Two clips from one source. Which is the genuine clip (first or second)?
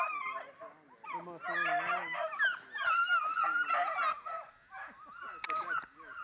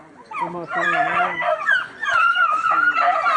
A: first